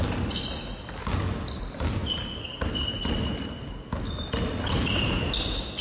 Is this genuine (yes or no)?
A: yes